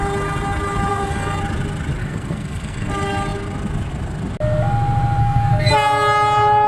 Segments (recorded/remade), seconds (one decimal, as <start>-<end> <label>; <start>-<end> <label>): 0.0-0.9 recorded; 0.9-1.4 remade; 1.4-2.0 recorded; 2.0-2.9 remade; 2.9-5.2 recorded; 5.2-5.7 remade; 5.7-6.7 recorded